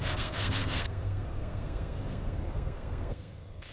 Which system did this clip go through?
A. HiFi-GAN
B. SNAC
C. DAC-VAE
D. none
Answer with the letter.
B